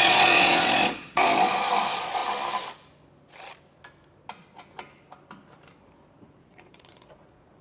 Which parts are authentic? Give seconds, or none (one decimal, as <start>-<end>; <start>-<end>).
2.2-6.2

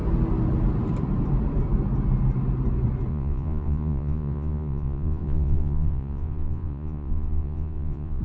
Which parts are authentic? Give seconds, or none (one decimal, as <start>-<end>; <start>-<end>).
0.0-3.1

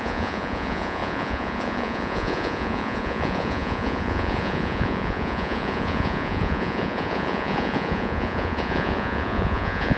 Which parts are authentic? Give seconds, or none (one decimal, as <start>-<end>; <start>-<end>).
none

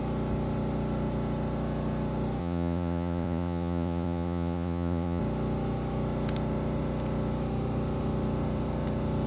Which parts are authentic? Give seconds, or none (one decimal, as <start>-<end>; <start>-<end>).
0.0-2.4; 5.2-9.3

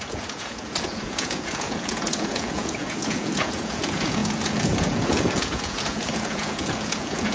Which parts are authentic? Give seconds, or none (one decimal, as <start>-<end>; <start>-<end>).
none

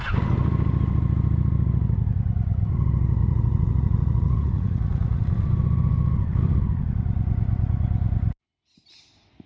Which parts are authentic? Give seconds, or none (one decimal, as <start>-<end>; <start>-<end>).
0.0-3.2; 5.2-9.5